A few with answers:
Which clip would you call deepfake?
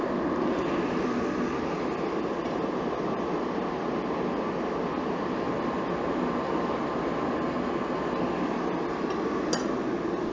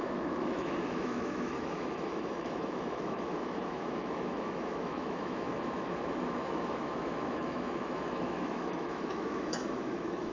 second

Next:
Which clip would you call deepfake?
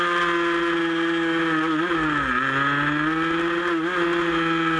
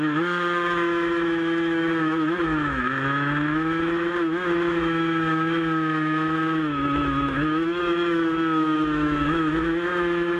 second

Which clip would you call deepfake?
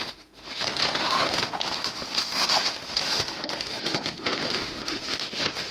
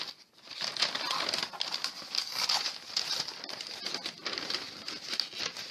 first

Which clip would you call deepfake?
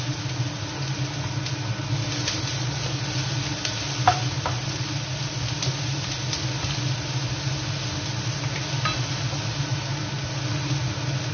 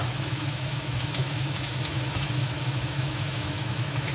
second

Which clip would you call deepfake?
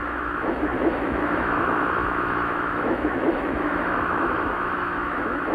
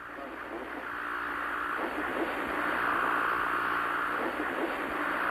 first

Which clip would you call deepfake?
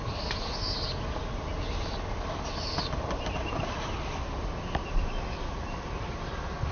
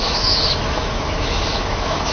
second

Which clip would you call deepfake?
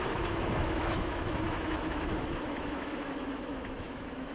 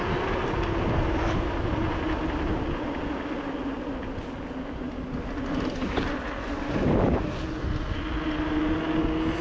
first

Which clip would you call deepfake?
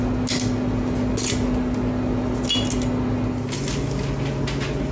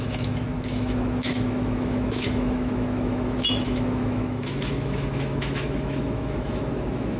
second